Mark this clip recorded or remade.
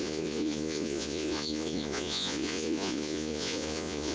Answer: remade